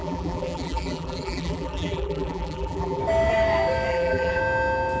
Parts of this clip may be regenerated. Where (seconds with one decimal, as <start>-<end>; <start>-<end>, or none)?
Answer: 0.0-3.0; 3.9-4.4